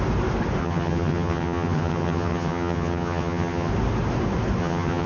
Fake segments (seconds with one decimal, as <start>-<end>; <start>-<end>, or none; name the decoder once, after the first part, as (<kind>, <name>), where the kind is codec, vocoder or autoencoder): 0.6-3.7 (vocoder, HiFi-GAN); 4.6-5.1